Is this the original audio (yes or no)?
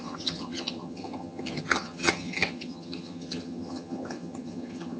no